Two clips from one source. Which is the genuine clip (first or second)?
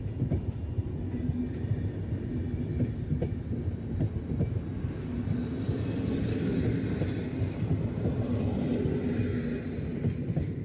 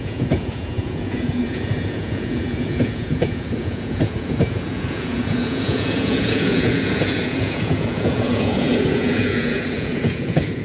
first